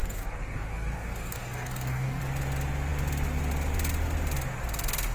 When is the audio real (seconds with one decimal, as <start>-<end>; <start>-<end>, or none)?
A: 2.2-5.1